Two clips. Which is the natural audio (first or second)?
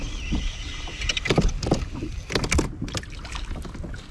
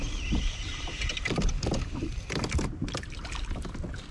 first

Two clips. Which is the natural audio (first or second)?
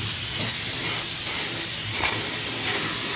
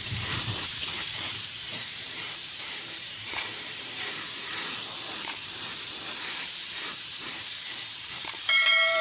first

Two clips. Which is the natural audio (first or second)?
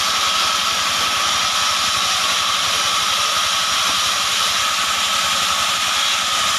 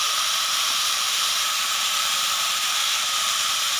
first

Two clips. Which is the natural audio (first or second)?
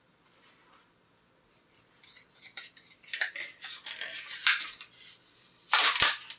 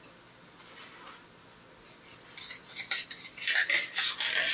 second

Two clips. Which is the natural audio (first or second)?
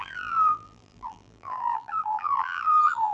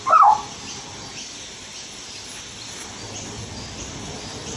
second